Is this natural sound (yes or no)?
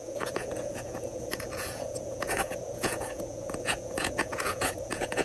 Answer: no